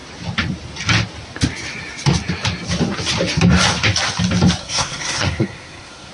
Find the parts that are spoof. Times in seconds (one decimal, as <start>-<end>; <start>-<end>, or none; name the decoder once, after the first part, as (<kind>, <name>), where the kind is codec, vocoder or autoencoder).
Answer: 4.6-6.1 (codec, SNAC)